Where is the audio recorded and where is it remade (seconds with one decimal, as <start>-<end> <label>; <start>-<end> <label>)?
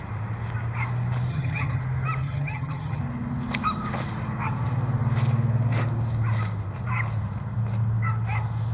0.0-1.3 recorded; 1.3-1.8 remade; 1.8-2.2 recorded; 2.2-3.0 remade; 3.0-8.7 recorded